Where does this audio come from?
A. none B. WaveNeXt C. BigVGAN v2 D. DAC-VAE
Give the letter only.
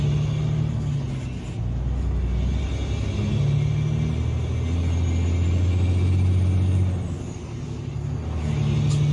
A